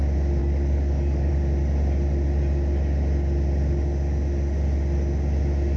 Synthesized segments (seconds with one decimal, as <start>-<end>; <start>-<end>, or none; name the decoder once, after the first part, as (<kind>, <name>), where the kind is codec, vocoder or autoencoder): 0.4-1.3 (codec, DAC)